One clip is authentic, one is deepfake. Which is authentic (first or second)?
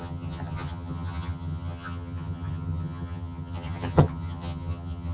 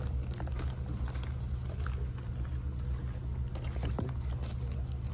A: second